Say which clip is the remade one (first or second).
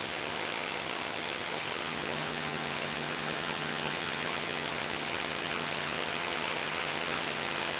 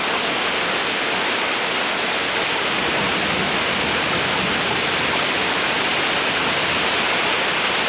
first